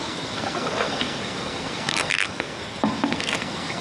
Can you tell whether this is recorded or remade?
remade